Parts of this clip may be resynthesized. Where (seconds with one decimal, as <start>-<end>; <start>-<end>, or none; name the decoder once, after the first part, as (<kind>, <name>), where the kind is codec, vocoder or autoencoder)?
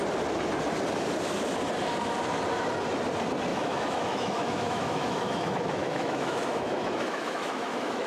3.5-8.1 (autoencoder, DAC-VAE)